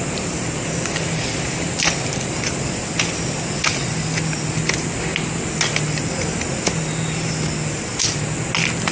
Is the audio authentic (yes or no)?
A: yes